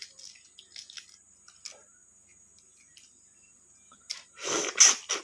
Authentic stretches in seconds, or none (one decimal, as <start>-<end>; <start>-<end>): 0.0-5.2